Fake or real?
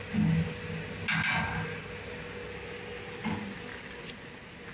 real